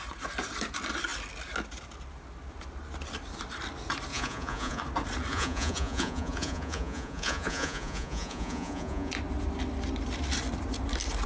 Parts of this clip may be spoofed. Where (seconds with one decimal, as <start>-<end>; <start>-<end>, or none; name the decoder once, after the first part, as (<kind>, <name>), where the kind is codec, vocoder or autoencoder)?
4.1-4.8 (vocoder, Vocos); 5.3-9.1